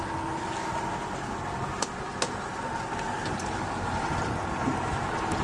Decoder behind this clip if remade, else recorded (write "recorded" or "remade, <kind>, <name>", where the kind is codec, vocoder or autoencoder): recorded